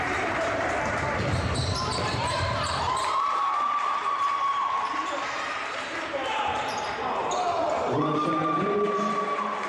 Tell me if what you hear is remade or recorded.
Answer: remade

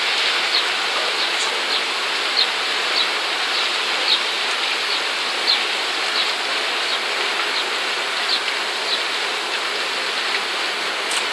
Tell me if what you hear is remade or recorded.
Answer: recorded